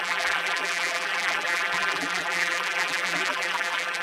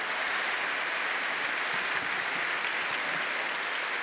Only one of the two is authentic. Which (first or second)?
second